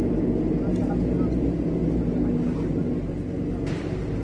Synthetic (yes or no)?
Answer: no